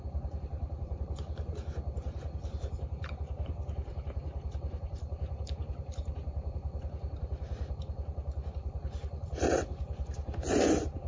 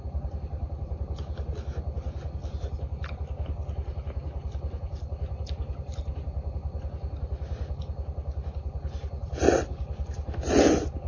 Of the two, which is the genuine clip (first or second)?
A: second